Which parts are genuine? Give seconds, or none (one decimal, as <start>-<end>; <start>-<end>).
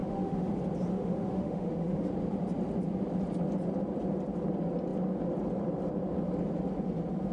0.5-0.9; 2.1-7.3